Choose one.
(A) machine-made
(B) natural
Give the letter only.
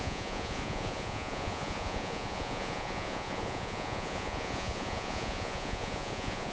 A